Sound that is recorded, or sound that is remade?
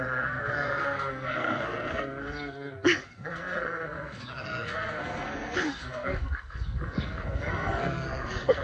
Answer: remade